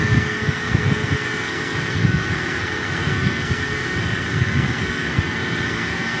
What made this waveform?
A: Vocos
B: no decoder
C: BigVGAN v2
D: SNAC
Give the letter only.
D